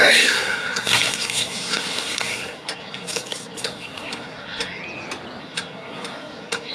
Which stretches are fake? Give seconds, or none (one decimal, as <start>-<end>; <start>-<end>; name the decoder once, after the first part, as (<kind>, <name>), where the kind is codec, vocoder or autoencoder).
0.0-4.8 (codec, SNAC); 5.4-6.7

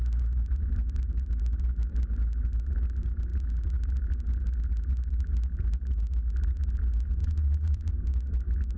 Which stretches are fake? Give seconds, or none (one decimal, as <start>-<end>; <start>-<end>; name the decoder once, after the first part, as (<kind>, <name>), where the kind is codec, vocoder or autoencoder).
7.2-7.9 (vocoder, Vocos)